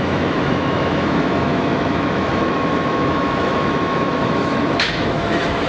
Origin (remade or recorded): remade